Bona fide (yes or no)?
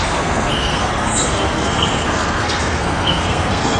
no